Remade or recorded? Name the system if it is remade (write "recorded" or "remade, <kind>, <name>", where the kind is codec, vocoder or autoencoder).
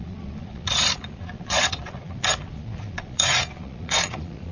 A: remade, vocoder, Vocos